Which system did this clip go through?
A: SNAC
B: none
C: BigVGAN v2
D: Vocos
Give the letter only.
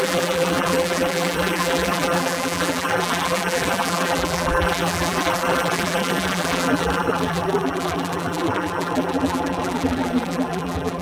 C